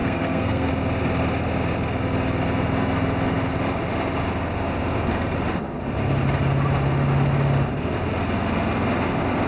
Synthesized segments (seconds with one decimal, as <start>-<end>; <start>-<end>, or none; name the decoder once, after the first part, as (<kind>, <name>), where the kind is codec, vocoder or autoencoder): 0.0-0.7 (codec, SNAC)